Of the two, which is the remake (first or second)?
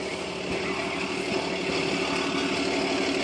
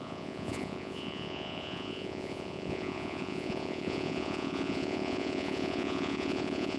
second